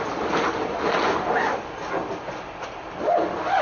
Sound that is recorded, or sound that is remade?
recorded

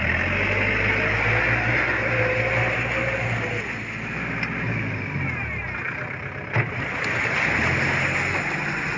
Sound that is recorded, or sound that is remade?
recorded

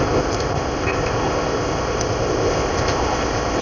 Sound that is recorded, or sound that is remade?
remade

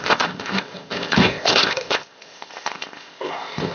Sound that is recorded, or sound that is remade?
remade